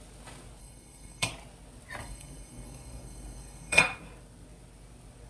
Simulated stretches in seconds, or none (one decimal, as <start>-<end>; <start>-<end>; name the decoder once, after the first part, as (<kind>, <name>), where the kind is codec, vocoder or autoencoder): 0.6-1.3 (codec, SNAC); 2.0-3.8